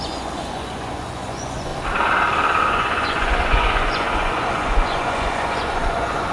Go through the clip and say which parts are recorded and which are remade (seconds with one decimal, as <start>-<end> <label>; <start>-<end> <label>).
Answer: 0.0-1.7 remade; 1.7-2.6 recorded; 2.6-6.3 remade